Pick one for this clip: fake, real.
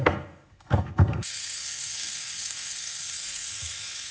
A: fake